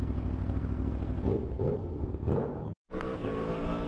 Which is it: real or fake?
fake